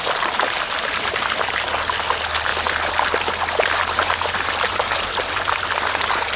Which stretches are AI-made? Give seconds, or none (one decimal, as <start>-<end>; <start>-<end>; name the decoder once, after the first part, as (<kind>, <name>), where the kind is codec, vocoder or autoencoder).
none